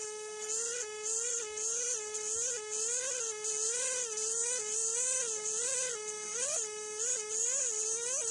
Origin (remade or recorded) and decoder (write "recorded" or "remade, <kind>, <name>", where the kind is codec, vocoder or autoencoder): recorded